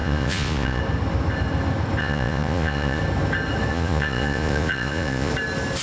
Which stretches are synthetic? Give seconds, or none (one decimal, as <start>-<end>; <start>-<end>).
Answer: 0.0-0.8; 2.0-3.0; 3.7-5.3